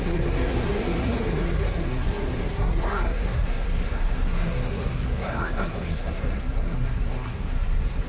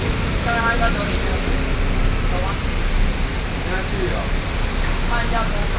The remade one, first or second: first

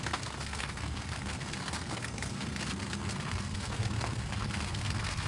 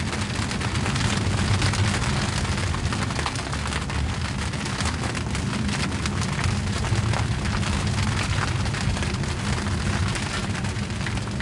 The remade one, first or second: first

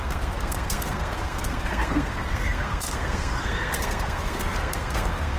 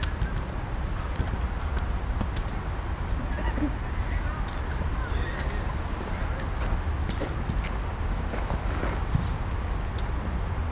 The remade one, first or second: first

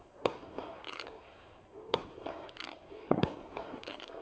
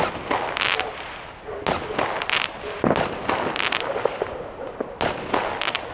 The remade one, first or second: first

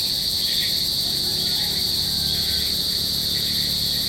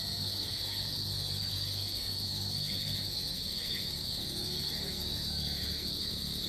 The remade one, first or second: second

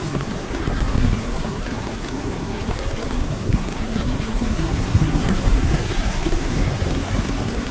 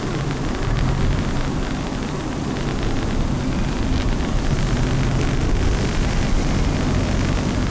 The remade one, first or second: first